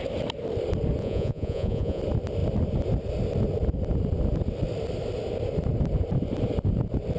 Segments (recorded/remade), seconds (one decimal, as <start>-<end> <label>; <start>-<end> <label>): 0.0-1.0 recorded; 1.0-2.0 remade; 2.0-7.2 recorded